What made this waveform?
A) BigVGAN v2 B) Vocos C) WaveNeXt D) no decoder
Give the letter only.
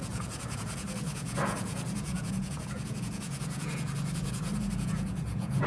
B